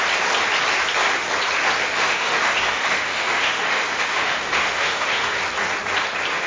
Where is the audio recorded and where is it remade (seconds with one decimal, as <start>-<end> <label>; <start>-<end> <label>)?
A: 0.0-1.8 recorded; 1.8-5.4 remade; 5.4-6.5 recorded